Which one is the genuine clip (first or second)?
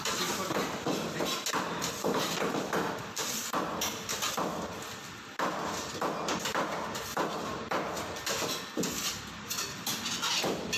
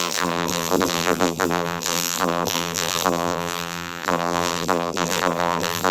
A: first